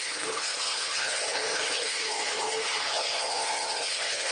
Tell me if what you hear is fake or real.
fake